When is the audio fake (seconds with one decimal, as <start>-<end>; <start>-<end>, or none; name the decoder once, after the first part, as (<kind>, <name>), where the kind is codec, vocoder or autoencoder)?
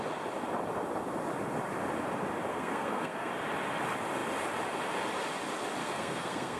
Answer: 2.5-3.3 (codec, SNAC); 5.8-6.6